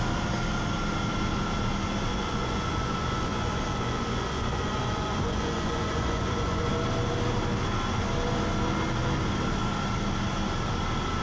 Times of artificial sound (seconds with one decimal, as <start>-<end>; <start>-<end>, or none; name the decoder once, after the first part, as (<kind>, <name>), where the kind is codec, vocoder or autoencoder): 2.1-6.7 (vocoder, Vocos)